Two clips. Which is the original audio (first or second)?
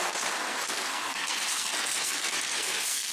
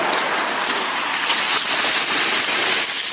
second